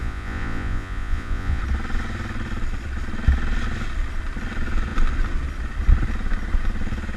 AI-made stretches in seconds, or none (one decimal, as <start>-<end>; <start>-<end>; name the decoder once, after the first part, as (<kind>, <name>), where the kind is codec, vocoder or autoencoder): 0.0-1.6 (vocoder, Vocos)